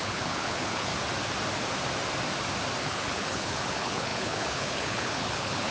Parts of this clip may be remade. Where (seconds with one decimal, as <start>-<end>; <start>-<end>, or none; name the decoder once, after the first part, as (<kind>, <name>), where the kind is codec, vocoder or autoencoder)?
0.0-0.9 (codec, HILCodec); 2.8-5.7